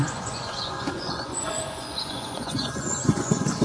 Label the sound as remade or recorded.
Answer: remade